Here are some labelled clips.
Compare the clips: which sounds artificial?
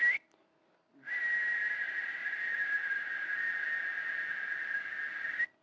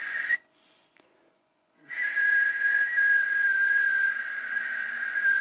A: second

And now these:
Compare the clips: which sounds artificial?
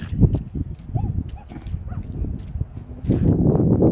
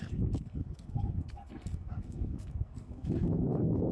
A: second